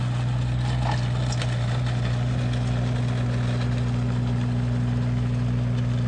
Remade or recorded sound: recorded